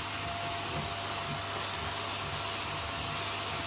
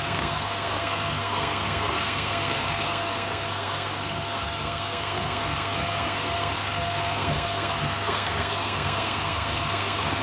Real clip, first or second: first